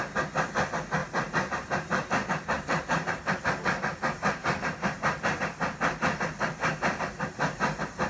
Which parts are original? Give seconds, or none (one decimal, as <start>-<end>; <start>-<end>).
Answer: 0.0-1.0; 3.4-4.4; 5.4-6.6; 7.2-8.1